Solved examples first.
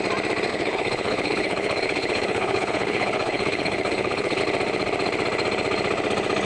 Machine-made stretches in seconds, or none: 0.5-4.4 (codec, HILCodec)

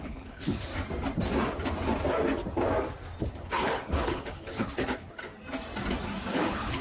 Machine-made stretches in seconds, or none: 0.0-0.7 (codec, HILCodec); 3.2-5.3; 6.3-6.8